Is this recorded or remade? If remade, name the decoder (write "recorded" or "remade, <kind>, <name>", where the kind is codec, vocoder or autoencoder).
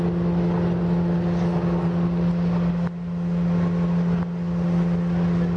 recorded